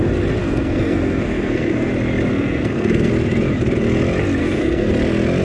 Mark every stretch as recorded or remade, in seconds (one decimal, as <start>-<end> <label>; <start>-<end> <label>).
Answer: 0.0-0.4 recorded; 0.4-1.9 remade; 1.9-2.3 recorded; 2.3-3.1 remade; 3.1-4.4 recorded; 4.4-4.9 remade; 4.9-5.4 recorded